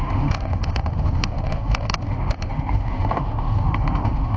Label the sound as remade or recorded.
remade